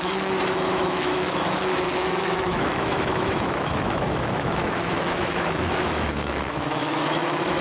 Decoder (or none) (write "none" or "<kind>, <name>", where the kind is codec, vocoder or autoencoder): autoencoder, DAC-VAE